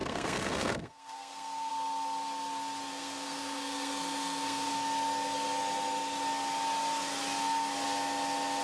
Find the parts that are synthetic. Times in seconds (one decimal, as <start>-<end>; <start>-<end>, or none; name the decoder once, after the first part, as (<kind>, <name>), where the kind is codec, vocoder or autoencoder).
0.0-1.7 (codec, SNAC); 2.9-4.7